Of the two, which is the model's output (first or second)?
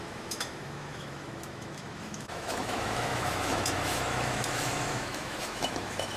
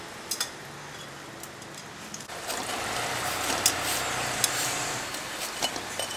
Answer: first